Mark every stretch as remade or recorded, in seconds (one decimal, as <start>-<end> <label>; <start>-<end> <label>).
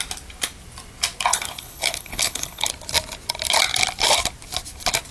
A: 0.0-1.3 recorded; 1.3-2.7 remade; 2.7-5.1 recorded